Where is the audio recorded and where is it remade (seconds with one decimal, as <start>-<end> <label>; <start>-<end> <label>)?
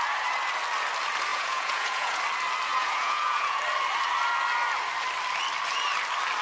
0.0-1.3 recorded; 1.3-2.2 remade; 2.2-2.7 recorded; 2.7-3.6 remade; 3.6-6.4 recorded